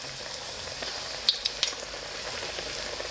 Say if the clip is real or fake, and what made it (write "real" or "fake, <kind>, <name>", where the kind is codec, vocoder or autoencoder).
real